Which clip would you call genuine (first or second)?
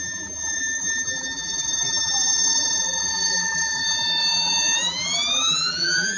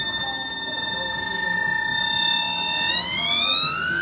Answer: second